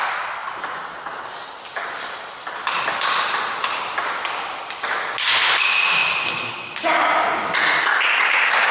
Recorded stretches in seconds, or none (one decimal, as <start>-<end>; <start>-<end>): 0.0-0.4; 4.8-8.7